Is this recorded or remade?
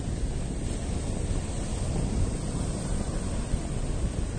recorded